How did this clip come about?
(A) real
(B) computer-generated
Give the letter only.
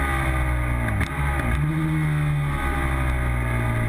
A